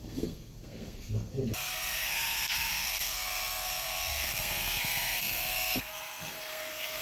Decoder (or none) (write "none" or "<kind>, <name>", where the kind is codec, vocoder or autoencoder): codec, SNAC